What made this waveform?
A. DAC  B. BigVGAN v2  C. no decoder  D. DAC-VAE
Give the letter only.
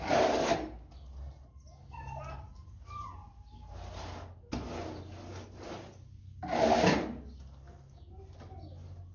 C